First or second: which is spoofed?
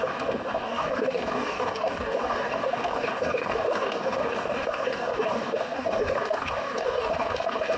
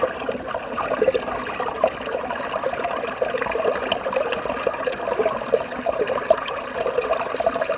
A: first